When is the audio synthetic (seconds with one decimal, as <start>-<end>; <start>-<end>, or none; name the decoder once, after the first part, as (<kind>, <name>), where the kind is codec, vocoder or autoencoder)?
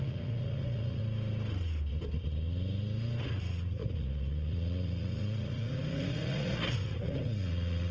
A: 0.0-1.0 (vocoder, Vocos); 3.2-7.9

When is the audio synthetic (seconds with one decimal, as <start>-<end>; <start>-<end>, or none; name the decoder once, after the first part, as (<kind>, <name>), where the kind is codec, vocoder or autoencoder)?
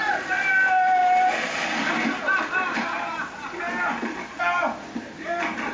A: none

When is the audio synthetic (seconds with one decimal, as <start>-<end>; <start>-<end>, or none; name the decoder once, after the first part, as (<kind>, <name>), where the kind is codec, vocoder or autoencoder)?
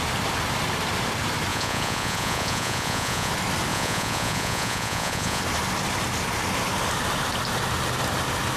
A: 1.5-3.3 (vocoder, Vocos); 3.7-5.4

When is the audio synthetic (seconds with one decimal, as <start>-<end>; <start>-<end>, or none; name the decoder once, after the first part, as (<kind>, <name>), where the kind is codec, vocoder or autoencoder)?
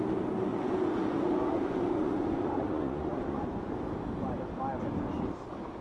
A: 0.5-3.7 (vocoder, Vocos)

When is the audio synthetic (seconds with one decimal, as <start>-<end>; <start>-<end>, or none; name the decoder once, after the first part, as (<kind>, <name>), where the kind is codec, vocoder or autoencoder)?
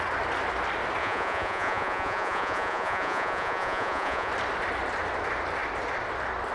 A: 1.0-4.3 (vocoder, Vocos)